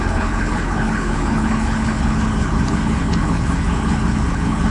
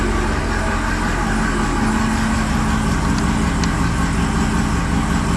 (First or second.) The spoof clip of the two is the first